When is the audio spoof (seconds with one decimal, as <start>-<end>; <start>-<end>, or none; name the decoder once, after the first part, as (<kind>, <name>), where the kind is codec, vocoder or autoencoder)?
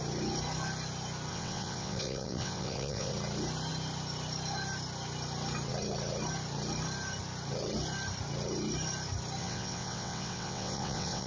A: 1.3-3.1 (vocoder, WaveNeXt); 9.4-11.3